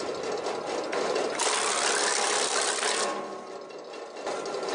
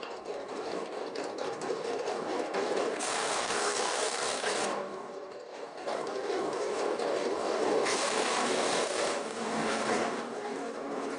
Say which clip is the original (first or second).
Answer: first